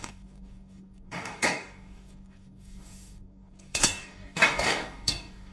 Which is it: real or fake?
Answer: fake